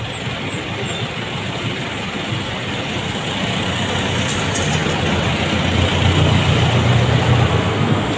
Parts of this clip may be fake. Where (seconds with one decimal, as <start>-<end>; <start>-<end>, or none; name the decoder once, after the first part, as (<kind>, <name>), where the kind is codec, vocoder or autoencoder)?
7.5-8.2 (codec, SNAC)